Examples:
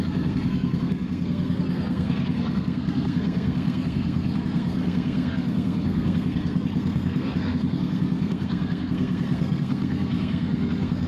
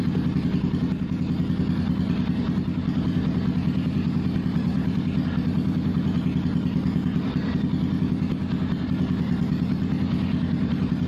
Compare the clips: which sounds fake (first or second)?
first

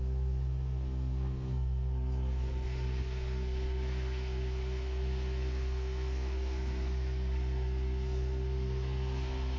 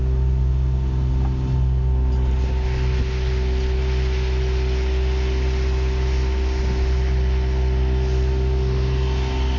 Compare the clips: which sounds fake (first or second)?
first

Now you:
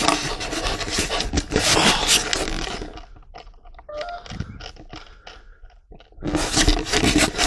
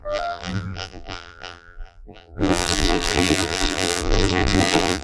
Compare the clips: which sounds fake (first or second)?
second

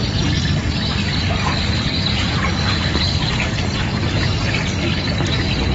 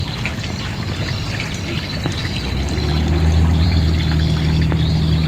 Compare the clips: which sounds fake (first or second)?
second